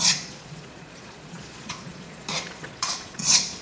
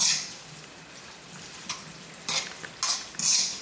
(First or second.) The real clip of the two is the second